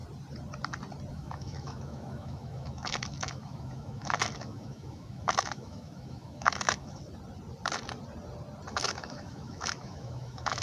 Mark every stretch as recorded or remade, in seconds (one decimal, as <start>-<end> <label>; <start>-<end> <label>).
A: 0.0-1.1 recorded; 1.1-7.0 remade; 7.0-8.7 recorded; 8.7-10.6 remade

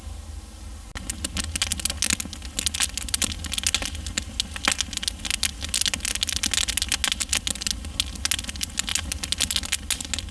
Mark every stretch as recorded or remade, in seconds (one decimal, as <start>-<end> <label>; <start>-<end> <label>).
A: 0.0-10.3 recorded

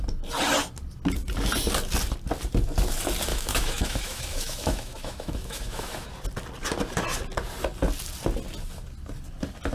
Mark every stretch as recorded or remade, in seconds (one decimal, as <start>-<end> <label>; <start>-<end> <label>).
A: 0.0-3.3 recorded; 3.3-6.1 remade; 6.1-9.7 recorded

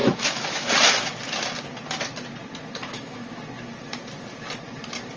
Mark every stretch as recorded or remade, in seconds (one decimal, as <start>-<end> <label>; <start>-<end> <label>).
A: 0.0-0.7 remade; 0.7-2.8 recorded; 2.8-3.4 remade; 3.4-5.2 recorded